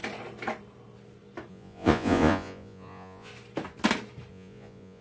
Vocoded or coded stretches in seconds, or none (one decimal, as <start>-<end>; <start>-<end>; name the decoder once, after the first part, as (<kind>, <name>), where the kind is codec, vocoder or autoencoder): 1.5-3.3 (vocoder, Vocos); 4.3-5.0